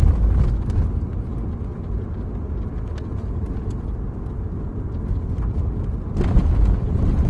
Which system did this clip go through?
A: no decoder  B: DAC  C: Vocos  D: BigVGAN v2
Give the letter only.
A